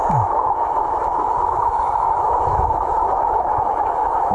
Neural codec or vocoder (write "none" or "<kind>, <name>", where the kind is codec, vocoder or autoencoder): autoencoder, DAC-VAE